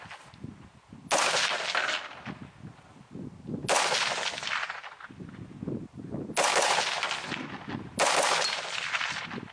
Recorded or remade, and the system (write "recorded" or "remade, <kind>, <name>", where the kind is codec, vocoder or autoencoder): recorded